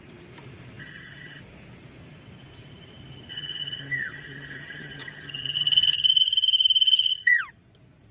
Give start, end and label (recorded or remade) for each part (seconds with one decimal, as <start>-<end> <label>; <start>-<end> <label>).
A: 0.0-0.8 recorded; 0.8-1.4 remade; 1.4-3.3 recorded; 3.3-7.4 remade; 7.4-8.1 recorded